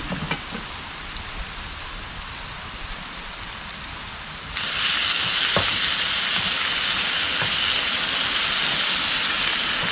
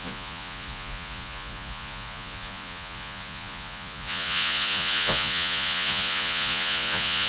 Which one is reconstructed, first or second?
second